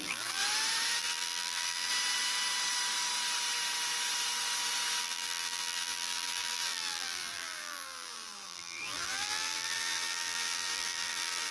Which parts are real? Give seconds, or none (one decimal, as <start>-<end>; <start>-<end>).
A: 0.4-1.0; 1.9-5.0